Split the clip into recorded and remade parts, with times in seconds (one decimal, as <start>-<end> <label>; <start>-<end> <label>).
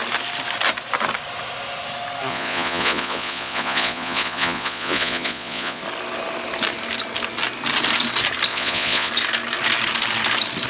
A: 0.0-2.3 recorded; 2.3-5.8 remade; 5.8-8.5 recorded; 8.5-9.1 remade; 9.1-10.7 recorded